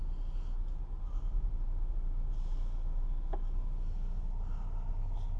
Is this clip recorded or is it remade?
recorded